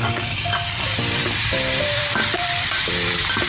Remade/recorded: remade